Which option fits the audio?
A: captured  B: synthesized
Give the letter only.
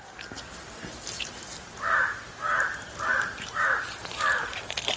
B